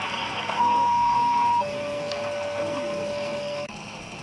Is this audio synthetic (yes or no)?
yes